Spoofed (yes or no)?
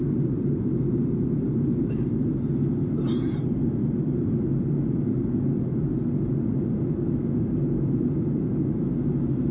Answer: no